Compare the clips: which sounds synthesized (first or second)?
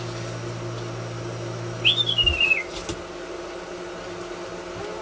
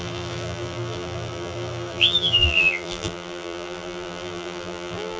second